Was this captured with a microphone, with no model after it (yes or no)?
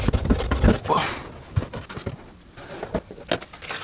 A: yes